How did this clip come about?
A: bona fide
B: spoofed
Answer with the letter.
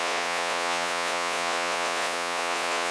B